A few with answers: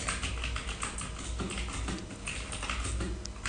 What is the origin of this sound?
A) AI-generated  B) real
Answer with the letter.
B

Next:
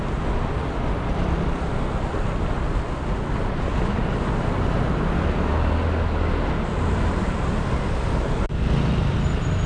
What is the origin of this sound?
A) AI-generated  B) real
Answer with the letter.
B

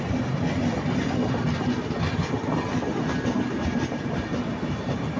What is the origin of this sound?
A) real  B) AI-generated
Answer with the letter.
A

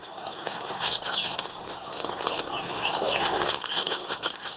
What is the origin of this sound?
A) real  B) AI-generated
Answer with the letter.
B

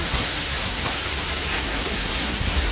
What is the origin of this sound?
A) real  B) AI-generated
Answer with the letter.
B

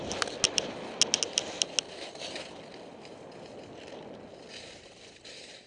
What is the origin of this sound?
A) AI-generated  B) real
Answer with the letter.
B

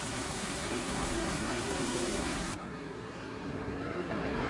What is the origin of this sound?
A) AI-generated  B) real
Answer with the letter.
A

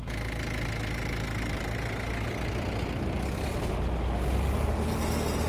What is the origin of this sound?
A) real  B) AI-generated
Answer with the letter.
A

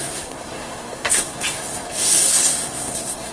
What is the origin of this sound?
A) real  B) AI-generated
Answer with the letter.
B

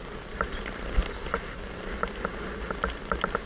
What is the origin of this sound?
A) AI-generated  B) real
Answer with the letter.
B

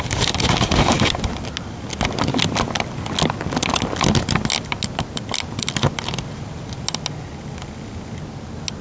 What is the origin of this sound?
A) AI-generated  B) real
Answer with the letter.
B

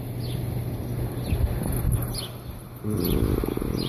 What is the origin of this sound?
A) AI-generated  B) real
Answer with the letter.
B